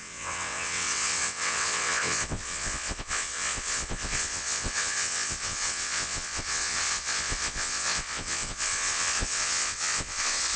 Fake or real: fake